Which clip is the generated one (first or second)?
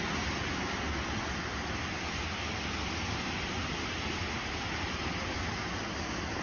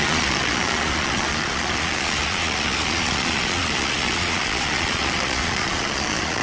second